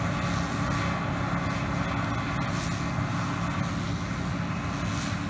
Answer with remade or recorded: recorded